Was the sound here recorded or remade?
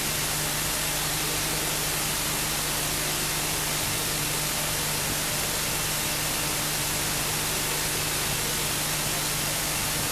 recorded